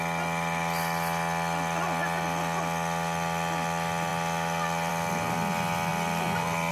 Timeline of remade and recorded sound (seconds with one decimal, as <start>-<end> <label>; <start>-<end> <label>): 0.0-6.7 recorded